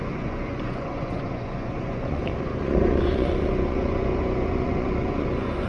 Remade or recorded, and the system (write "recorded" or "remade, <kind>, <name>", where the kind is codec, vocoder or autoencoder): remade, vocoder, Vocos